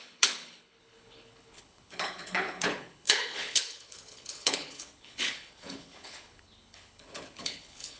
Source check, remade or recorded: remade